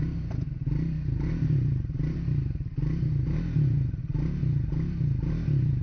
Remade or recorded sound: remade